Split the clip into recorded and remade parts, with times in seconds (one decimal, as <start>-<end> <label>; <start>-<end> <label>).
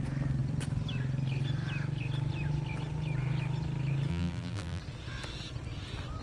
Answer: 0.0-4.1 recorded; 4.1-4.8 remade; 4.8-6.2 recorded